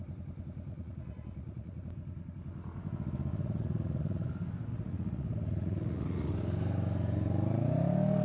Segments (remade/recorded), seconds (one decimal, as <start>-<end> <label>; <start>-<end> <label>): 0.0-0.7 recorded; 0.7-1.8 remade; 1.8-3.3 recorded; 3.3-4.3 remade; 4.3-4.7 recorded; 4.7-6.3 remade; 6.3-8.2 recorded